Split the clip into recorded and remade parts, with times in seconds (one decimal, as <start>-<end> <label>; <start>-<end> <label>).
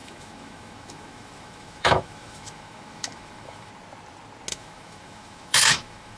0.0-3.7 remade; 3.7-4.5 recorded; 4.5-6.2 remade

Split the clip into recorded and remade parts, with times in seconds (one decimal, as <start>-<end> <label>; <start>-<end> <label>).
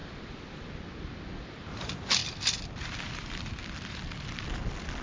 0.0-2.2 recorded; 2.2-4.0 remade; 4.0-5.0 recorded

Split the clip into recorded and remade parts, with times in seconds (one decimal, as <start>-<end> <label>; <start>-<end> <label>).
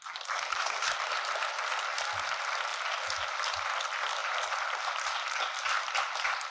0.0-2.7 remade; 2.7-3.3 recorded; 3.3-6.5 remade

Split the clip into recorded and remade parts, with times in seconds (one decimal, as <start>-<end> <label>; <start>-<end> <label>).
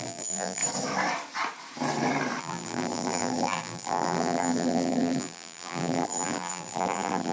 0.0-0.6 remade; 0.6-2.4 recorded; 2.4-7.3 remade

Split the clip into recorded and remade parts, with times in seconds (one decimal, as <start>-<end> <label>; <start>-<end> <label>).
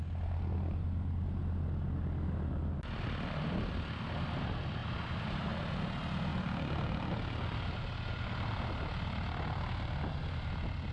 0.0-4.8 recorded; 4.8-5.5 remade; 5.5-10.9 recorded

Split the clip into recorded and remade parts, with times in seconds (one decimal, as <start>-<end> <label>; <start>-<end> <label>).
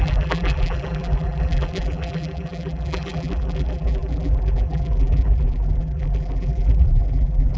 0.0-7.6 remade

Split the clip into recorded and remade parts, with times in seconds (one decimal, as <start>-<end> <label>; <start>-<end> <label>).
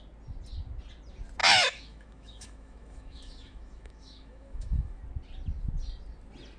0.0-1.4 recorded; 1.4-5.0 remade; 5.0-6.6 recorded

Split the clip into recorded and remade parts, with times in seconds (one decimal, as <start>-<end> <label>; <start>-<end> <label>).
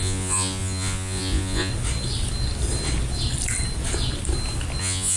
0.0-1.7 remade; 1.7-4.8 recorded; 4.8-5.2 remade